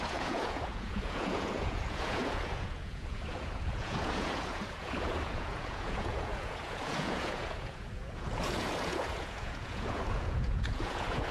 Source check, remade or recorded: remade